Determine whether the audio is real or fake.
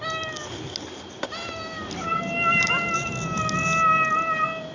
real